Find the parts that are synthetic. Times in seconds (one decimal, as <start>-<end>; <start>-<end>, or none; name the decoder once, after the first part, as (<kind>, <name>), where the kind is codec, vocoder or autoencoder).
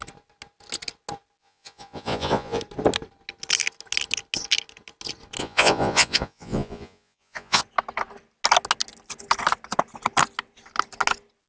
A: 1.4-2.6 (vocoder, Vocos); 5.4-7.6